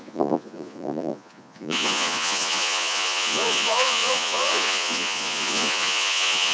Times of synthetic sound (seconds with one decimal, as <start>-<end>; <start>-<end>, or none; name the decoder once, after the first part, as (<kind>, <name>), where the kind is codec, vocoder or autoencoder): 0.0-6.5 (vocoder, Vocos)